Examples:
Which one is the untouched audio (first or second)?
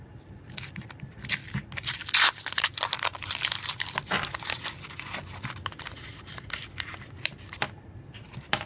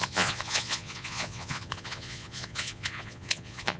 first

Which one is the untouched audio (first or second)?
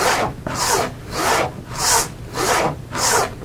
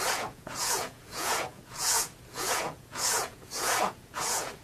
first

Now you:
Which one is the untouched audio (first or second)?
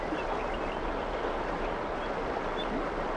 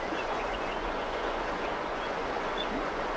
first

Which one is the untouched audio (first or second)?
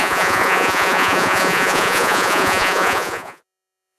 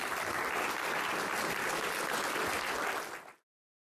second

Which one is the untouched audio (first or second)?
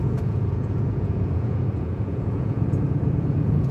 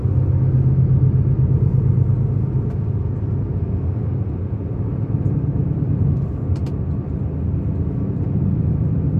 second